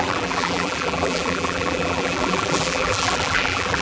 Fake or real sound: fake